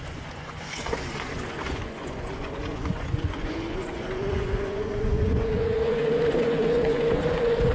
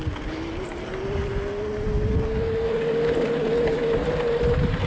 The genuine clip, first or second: second